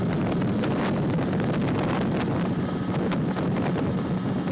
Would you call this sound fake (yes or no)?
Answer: no